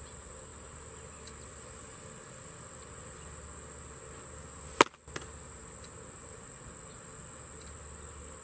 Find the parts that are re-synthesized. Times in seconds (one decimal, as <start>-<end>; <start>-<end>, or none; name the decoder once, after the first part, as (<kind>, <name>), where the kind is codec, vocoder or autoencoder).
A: none